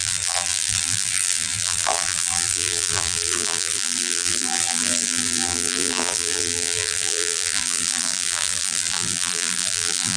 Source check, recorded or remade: remade